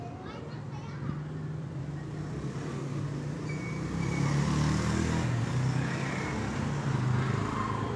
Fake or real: real